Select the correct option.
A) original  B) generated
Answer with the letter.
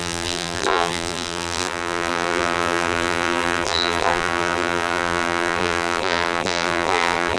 B